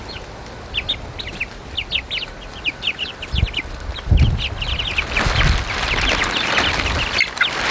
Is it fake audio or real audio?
real